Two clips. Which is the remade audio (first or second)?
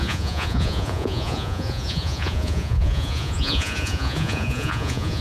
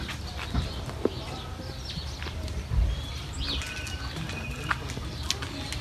first